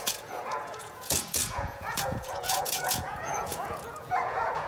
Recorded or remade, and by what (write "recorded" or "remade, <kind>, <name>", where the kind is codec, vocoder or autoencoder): remade, vocoder, Vocos